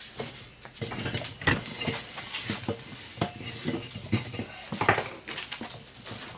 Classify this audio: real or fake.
real